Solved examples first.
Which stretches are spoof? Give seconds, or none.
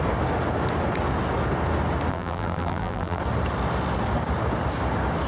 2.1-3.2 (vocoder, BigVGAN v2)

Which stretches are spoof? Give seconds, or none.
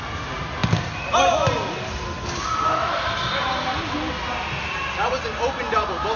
none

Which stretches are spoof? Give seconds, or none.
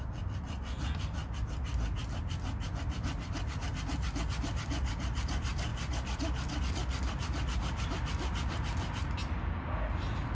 none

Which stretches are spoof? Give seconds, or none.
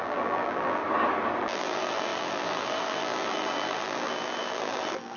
0.0-0.8 (vocoder, BigVGAN v2); 1.4-5.2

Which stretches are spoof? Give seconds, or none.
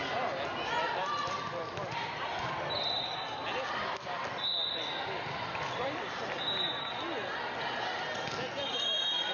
1.0-2.5 (vocoder, BigVGAN v2); 4.6-6.5